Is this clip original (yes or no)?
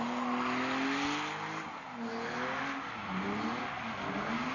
yes